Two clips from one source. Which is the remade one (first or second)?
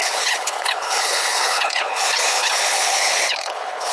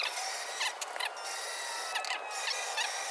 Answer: first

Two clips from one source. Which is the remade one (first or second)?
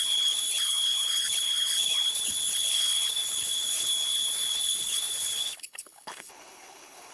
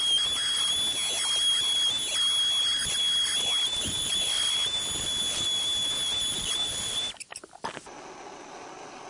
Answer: first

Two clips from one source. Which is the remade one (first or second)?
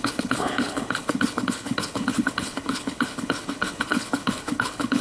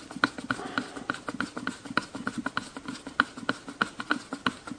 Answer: first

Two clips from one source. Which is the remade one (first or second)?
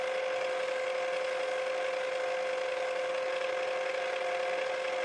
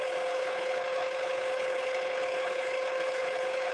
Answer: second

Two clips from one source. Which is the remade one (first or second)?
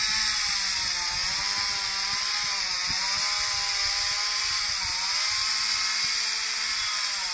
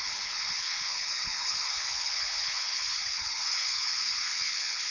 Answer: second